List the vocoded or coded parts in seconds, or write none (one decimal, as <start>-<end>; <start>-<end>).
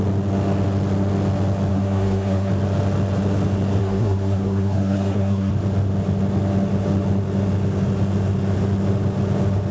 1.7-2.5; 3.8-5.5